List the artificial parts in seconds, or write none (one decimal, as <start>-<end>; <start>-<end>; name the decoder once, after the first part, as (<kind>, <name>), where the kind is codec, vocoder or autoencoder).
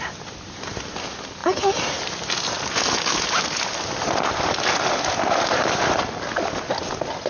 none